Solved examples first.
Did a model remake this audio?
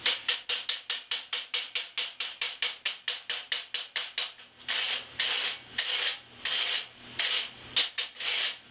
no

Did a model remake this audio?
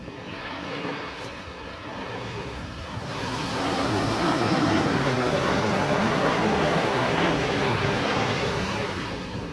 yes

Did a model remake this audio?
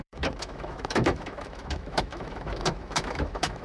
yes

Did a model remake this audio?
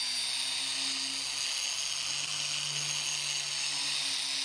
no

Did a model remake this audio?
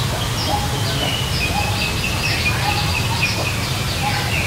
no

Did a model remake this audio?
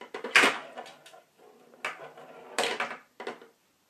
no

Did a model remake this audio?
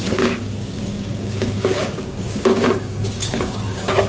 yes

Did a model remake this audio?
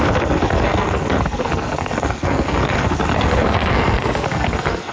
yes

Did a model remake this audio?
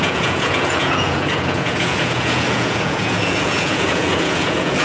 yes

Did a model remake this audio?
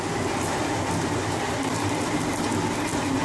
no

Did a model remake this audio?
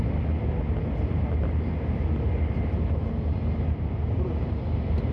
no